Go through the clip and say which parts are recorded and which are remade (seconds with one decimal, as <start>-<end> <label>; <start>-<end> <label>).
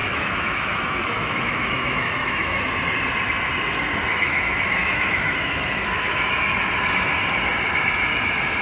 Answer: 0.0-2.7 remade; 2.7-4.1 recorded; 4.1-6.3 remade; 6.3-8.6 recorded